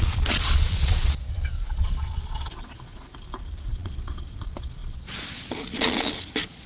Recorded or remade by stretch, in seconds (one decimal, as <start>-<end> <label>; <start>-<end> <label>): 0.0-3.1 remade; 3.1-3.7 recorded; 3.7-6.7 remade